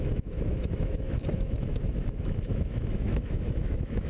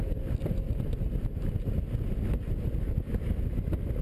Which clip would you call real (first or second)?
second